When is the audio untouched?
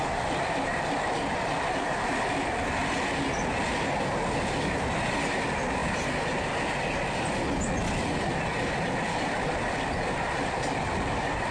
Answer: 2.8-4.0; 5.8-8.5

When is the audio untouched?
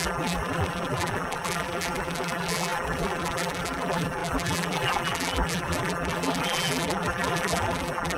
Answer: none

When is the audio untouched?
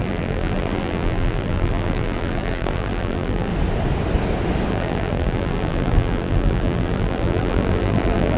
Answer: 3.5-4.7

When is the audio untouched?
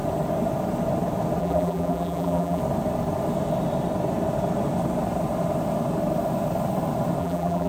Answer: 0.0-1.4; 2.6-7.2